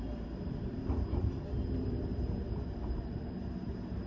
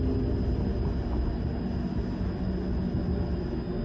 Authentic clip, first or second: second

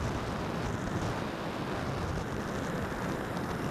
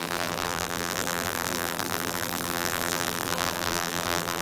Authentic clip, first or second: first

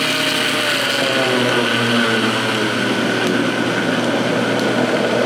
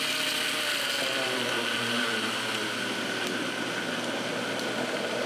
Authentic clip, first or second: first